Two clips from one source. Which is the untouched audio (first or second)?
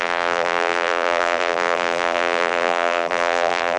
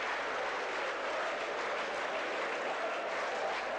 second